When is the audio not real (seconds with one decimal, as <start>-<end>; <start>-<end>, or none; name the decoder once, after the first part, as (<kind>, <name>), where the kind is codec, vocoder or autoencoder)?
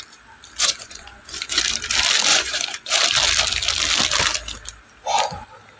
0.6-1.6 (vocoder, Vocos); 2.3-3.0